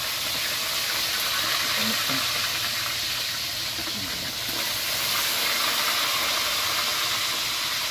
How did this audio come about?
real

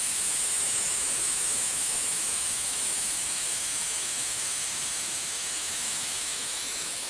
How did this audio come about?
fake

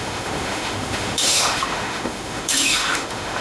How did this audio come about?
fake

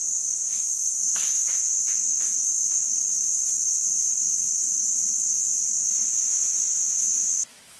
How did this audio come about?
fake